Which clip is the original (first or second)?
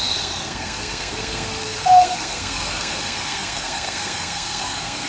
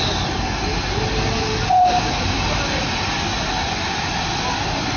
second